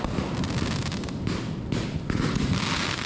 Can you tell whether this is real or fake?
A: real